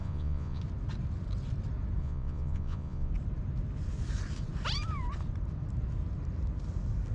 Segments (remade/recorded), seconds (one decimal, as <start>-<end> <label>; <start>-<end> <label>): 0.0-0.6 remade; 0.6-2.0 recorded; 2.0-3.1 remade; 3.1-7.1 recorded